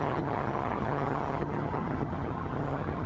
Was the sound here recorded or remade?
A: remade